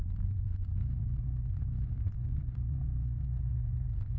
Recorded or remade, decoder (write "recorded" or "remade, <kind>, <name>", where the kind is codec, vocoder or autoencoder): remade, vocoder, Vocos